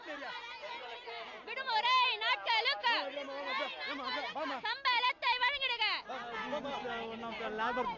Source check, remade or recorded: recorded